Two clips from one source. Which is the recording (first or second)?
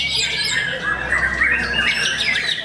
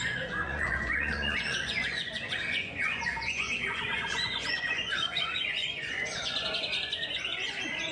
first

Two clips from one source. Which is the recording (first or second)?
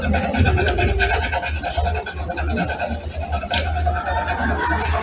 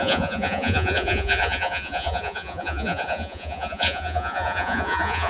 first